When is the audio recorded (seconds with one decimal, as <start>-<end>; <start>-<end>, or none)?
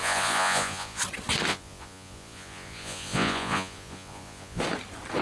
1.0-1.5; 4.6-5.2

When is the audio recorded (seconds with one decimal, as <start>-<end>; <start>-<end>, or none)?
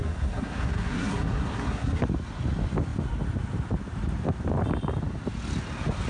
2.0-6.1